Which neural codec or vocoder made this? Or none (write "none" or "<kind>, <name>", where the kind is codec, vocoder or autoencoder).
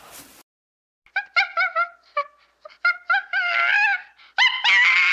none